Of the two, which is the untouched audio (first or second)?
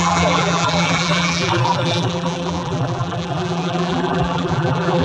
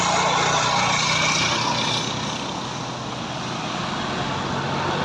second